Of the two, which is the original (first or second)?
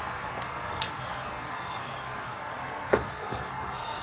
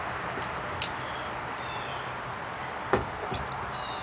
second